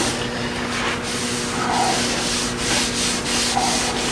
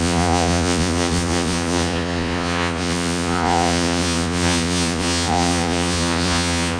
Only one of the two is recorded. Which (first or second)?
first